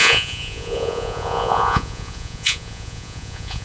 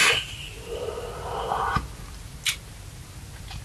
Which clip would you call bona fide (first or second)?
second